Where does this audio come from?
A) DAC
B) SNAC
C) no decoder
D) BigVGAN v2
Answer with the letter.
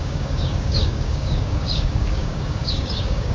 A